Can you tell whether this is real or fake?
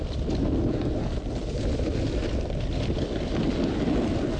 real